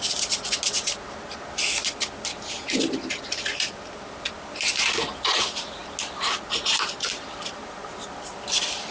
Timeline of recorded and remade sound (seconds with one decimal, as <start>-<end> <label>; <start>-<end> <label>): 0.0-8.9 recorded